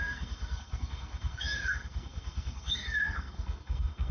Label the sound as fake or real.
fake